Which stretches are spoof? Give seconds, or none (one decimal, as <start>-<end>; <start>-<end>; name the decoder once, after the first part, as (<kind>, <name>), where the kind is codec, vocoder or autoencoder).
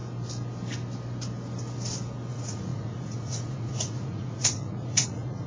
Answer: 2.3-5.5 (vocoder, Vocos)